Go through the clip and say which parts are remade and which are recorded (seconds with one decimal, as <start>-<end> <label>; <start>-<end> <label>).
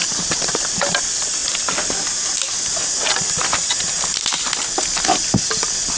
0.0-0.9 remade; 0.9-6.0 recorded